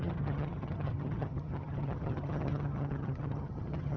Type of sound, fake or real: fake